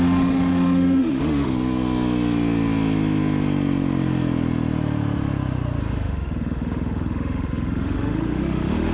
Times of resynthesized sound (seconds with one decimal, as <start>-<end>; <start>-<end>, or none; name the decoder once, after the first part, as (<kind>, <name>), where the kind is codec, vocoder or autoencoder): 0.0-1.5 (autoencoder, DAC-VAE); 5.8-8.9